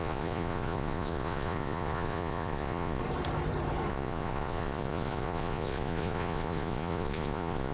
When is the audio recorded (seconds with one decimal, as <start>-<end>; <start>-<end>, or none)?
3.0-3.9